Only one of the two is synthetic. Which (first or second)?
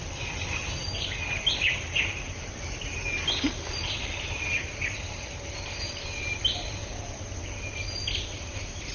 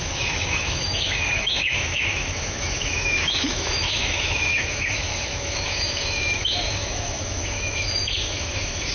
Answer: second